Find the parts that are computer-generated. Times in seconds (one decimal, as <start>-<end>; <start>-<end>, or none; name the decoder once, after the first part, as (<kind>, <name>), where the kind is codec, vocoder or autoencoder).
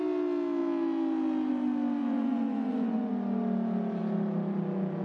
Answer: 2.0-3.1 (vocoder, Vocos)